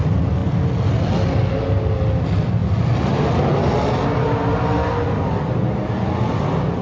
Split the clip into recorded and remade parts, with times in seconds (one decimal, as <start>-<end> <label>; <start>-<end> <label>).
0.0-6.8 recorded